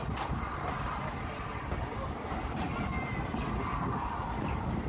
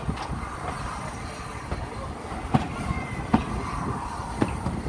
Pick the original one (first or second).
first